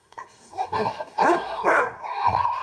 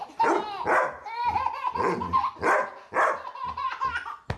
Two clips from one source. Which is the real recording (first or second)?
second